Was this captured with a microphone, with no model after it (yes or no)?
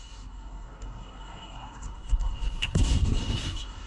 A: no